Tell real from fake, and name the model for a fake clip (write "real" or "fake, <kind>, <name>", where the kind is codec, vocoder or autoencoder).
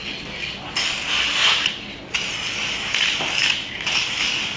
real